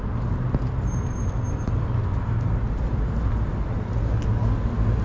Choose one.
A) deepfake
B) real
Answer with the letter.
B